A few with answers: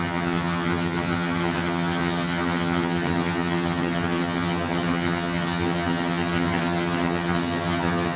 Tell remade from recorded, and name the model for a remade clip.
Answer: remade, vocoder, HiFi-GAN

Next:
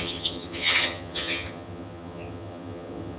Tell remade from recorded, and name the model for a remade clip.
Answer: remade, vocoder, HiFi-GAN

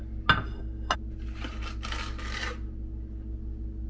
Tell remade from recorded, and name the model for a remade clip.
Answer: recorded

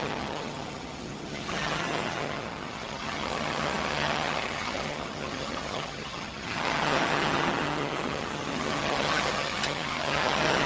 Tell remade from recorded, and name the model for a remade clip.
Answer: remade, vocoder, HiFi-GAN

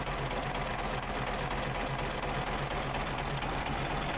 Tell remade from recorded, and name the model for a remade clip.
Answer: recorded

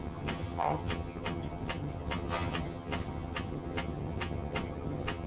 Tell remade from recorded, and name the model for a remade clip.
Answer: remade, vocoder, HiFi-GAN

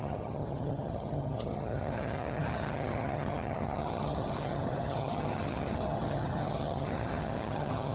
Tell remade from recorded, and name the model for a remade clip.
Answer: remade, vocoder, HiFi-GAN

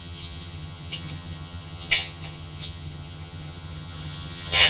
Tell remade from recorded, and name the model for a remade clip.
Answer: remade, vocoder, HiFi-GAN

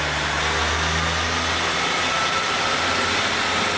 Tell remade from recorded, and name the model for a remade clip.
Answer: recorded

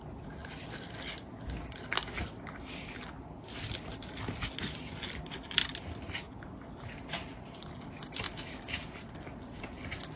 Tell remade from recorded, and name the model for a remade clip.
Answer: recorded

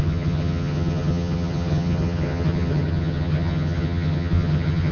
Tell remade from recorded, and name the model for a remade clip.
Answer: remade, vocoder, HiFi-GAN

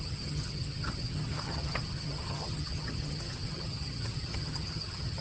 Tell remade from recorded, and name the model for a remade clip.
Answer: remade, vocoder, HiFi-GAN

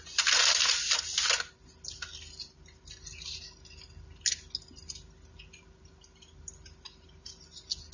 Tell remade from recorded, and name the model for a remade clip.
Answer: recorded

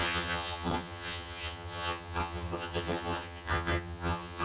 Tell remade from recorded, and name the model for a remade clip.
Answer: remade, vocoder, HiFi-GAN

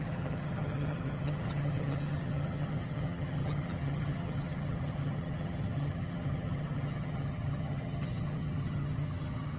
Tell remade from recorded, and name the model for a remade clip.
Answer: remade, vocoder, HiFi-GAN